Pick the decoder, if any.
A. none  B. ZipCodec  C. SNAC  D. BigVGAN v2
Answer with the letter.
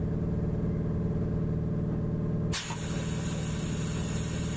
A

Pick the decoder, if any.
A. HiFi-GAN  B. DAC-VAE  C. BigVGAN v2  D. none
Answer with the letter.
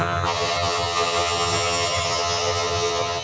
A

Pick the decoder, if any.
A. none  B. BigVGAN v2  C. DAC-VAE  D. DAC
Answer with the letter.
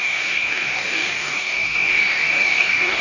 D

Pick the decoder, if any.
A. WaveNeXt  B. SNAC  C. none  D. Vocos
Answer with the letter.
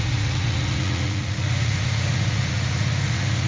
D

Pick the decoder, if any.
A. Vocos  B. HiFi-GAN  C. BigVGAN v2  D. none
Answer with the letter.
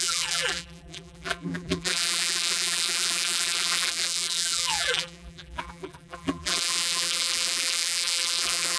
C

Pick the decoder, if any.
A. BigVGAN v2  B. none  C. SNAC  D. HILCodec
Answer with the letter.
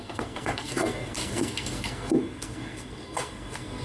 C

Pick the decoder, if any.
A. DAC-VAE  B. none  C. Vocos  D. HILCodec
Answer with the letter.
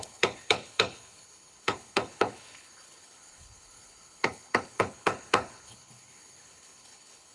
D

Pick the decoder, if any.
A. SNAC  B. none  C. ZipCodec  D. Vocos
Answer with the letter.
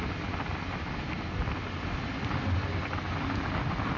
B